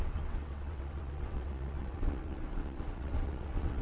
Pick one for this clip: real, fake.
fake